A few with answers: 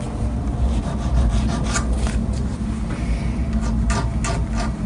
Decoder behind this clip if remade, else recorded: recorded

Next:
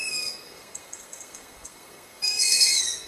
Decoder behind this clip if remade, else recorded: remade, codec, SNAC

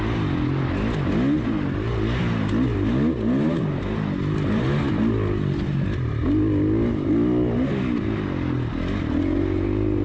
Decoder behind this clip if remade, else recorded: recorded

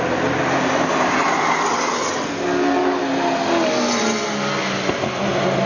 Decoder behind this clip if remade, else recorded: recorded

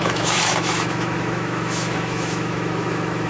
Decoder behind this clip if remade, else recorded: remade, autoencoder, DAC-VAE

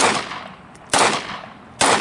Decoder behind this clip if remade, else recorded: recorded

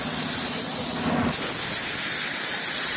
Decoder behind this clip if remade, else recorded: recorded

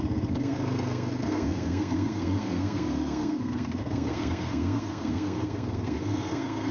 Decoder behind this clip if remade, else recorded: remade, codec, SNAC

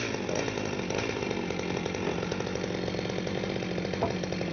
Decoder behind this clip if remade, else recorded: recorded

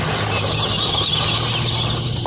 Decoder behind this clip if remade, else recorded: recorded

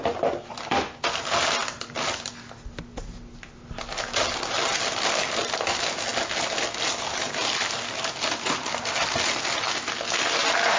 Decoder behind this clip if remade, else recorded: recorded